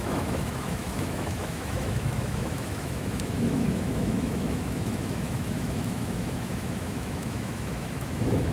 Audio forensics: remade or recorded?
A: remade